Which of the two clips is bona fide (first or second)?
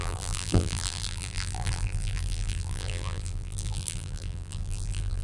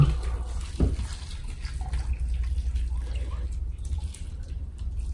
second